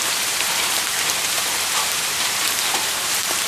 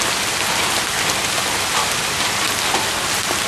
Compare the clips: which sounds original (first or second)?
second